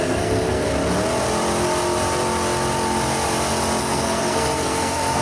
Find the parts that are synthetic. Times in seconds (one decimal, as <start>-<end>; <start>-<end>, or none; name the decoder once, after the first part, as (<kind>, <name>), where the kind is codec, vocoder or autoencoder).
0.0-0.7 (codec, SNAC); 3.8-5.2